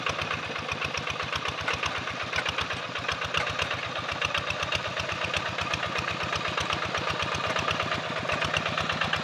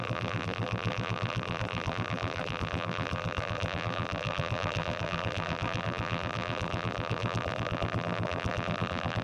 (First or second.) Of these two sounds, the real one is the first